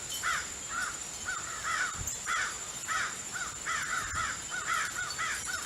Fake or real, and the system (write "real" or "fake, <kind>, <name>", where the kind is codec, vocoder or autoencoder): real